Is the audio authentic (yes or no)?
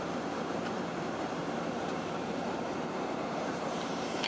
no